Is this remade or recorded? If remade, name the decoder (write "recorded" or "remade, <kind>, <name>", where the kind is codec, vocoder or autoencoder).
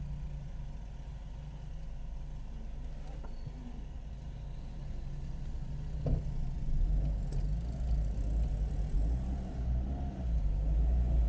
recorded